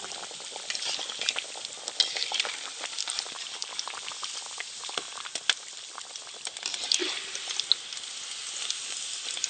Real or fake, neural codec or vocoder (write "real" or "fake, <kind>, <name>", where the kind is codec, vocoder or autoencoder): real